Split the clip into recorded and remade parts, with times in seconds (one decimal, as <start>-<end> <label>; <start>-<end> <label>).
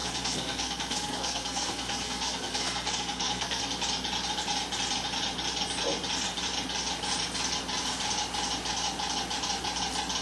0.0-3.6 remade; 3.6-10.2 recorded